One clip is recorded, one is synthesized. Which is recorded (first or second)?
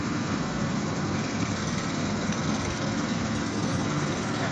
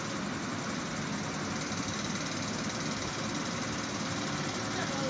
second